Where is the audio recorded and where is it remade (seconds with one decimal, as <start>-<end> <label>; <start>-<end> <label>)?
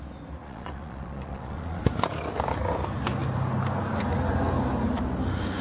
0.0-0.4 recorded; 0.4-1.8 remade; 1.8-5.6 recorded